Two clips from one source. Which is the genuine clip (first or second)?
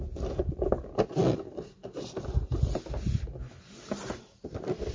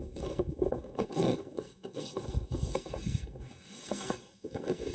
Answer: first